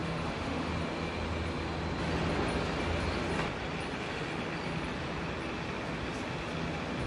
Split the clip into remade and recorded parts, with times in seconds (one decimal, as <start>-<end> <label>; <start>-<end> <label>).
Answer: 0.0-0.7 remade; 0.7-7.1 recorded